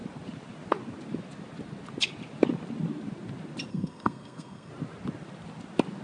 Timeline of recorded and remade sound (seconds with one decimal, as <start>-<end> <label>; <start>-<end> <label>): 0.0-3.7 recorded; 3.7-4.7 remade; 4.7-6.0 recorded